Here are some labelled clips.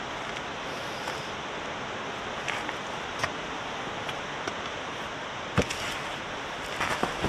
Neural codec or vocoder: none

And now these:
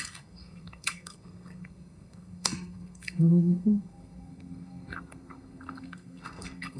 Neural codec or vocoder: codec, SNAC